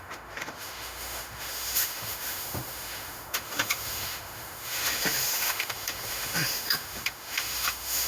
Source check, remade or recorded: remade